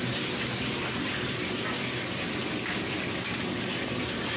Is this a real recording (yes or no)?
yes